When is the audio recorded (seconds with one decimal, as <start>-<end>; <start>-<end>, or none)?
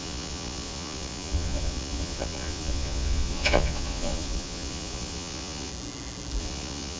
5.7-6.4